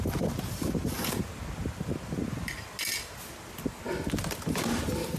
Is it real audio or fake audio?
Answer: real